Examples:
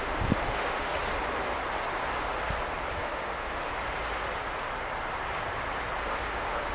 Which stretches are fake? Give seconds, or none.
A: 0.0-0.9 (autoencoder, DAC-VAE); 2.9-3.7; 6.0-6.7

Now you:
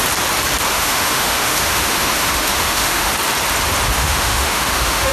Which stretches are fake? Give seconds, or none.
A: 0.7-3.1 (autoencoder, DAC-VAE); 4.0-5.1